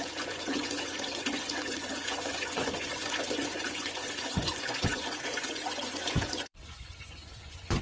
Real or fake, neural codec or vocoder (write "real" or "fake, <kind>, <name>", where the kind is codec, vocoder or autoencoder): fake, vocoder, Vocos